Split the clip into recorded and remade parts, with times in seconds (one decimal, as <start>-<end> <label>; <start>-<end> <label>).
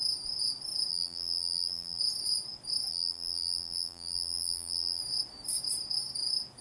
0.0-0.9 recorded; 0.9-2.0 remade; 2.0-2.9 recorded; 2.9-5.0 remade; 5.0-6.6 recorded